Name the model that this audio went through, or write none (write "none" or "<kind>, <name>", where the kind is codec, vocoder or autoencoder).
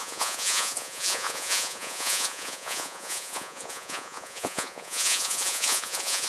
vocoder, Vocos